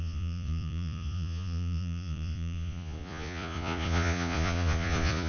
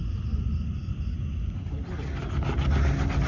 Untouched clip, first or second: second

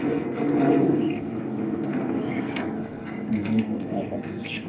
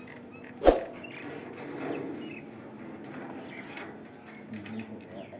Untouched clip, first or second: second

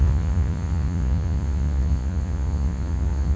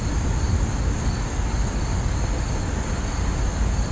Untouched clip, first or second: second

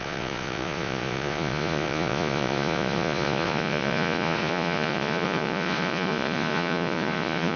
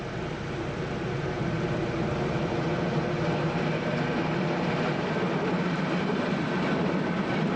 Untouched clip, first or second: second